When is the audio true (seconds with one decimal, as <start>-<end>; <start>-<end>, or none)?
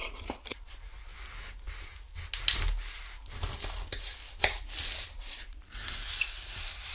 1.1-5.2